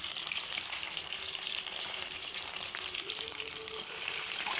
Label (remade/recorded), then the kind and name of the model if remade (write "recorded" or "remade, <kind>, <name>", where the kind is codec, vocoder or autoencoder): remade, vocoder, BigVGAN v2